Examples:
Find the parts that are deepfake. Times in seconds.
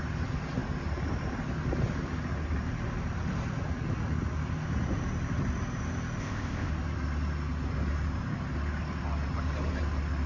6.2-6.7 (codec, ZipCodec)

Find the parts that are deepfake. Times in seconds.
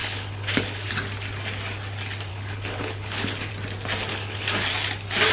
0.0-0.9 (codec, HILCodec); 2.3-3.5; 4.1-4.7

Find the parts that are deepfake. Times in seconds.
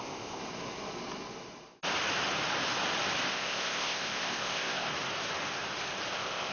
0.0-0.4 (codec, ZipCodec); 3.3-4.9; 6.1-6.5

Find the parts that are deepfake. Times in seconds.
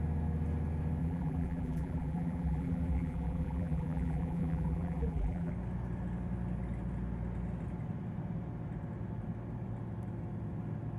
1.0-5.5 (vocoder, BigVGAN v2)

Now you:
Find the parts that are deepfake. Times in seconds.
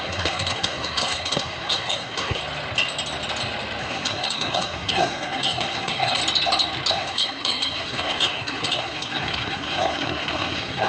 0.0-2.4 (codec, SNAC); 3.8-6.2; 6.9-10.9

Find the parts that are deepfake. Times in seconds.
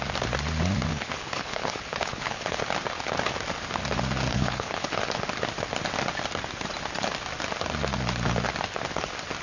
0.9-2.6 (codec, HILCodec); 4.3-5.0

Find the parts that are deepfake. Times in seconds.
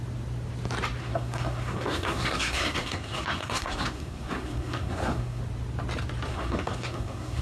1.0-5.4 (codec, SNAC); 6.3-7.4